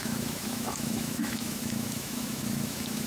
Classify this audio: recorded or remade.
remade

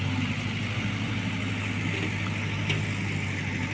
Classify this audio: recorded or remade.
recorded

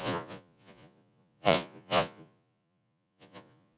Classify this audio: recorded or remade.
remade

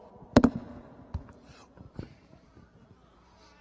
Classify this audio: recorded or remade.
recorded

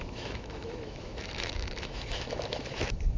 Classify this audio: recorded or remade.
remade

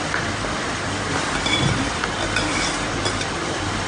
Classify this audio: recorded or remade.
remade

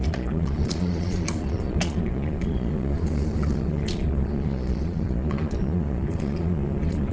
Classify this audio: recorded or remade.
remade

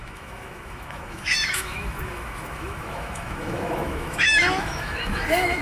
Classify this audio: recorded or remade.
remade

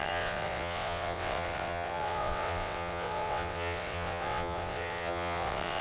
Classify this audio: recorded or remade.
remade